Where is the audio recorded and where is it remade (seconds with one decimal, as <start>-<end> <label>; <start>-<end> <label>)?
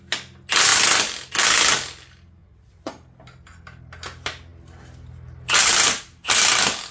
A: 0.0-2.4 recorded; 2.4-2.9 remade; 2.9-6.9 recorded